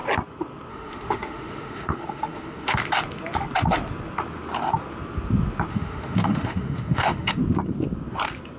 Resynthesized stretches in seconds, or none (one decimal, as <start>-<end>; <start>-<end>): 0.7-2.8; 5.7-7.4